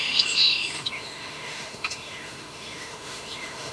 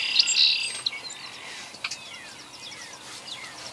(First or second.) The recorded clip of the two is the second